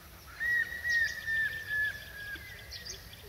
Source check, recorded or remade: recorded